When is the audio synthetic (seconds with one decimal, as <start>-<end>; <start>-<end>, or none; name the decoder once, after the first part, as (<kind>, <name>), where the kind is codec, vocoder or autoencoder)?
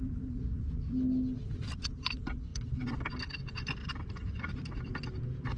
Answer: 2.5-3.1 (vocoder, BigVGAN v2); 3.8-5.6